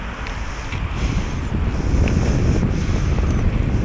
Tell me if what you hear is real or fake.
real